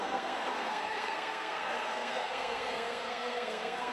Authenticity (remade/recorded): remade